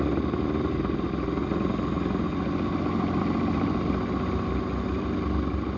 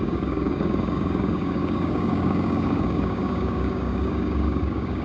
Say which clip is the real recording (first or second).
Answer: first